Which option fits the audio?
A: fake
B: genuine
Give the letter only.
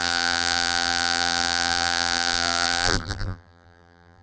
A